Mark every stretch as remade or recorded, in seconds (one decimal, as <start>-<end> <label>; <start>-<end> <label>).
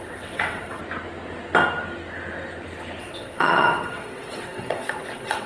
0.0-0.8 remade; 0.8-3.0 recorded; 3.0-5.5 remade